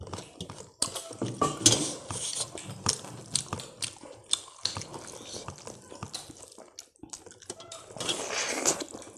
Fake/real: real